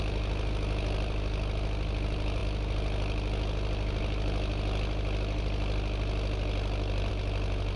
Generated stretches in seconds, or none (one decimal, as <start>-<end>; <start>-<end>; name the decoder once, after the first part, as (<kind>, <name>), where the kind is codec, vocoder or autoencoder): none